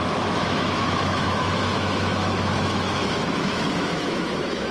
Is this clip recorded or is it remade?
remade